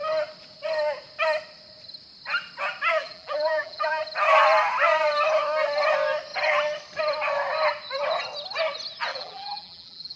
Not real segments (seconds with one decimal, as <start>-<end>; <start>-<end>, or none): 3.0-4.0; 9.1-10.2